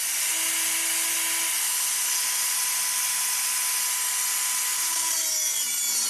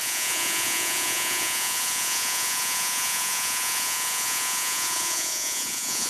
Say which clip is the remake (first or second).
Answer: second